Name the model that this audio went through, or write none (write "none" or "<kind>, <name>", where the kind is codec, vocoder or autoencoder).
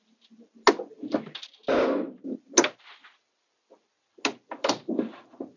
none